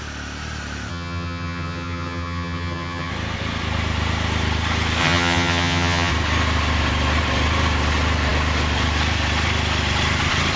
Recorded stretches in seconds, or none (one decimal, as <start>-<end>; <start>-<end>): 0.0-0.9; 3.1-5.0; 6.1-10.6